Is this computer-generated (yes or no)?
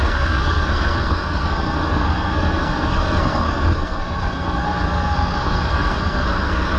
yes